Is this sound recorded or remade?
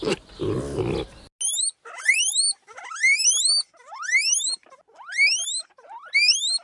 recorded